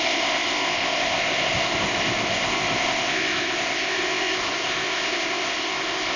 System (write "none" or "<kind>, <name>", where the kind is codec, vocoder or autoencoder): codec, ZipCodec